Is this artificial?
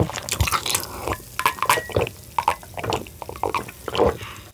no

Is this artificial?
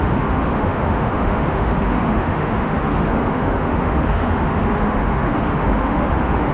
yes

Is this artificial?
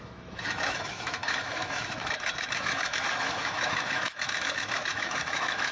yes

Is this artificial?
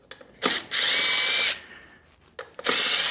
no